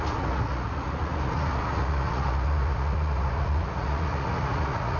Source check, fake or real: fake